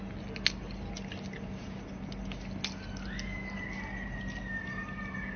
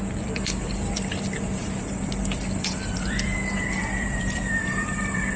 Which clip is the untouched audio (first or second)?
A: first